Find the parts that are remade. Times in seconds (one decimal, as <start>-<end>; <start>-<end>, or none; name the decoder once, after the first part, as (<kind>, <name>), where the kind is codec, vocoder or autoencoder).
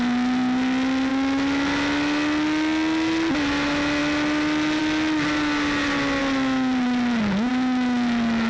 none